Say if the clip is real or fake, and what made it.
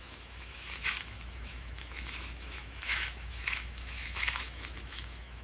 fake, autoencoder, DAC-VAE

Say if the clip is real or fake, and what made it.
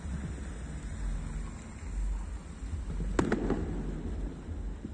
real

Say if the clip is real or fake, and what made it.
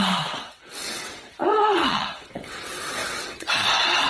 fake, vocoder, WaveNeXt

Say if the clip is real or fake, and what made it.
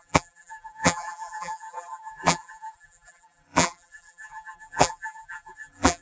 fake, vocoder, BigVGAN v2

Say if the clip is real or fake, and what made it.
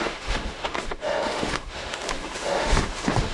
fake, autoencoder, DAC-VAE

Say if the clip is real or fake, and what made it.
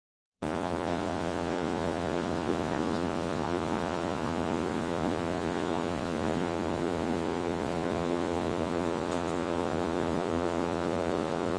fake, vocoder, Vocos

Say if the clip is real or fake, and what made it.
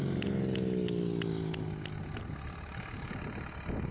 real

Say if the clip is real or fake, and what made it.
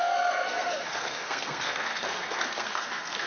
fake, codec, SNAC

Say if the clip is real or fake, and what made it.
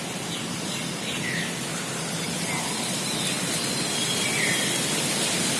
real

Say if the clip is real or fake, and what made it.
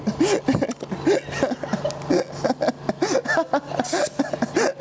real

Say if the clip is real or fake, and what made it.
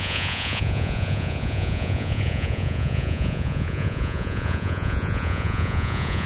fake, vocoder, Vocos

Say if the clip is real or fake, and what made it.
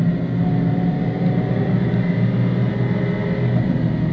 real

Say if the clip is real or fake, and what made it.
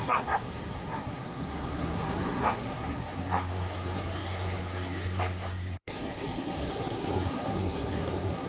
fake, codec, SNAC